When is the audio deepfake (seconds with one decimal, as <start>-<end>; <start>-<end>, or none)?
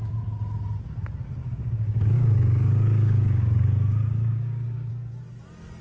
1.4-4.9